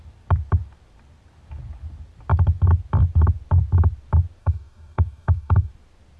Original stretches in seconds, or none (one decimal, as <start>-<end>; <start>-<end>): 0.0-4.4; 5.7-6.2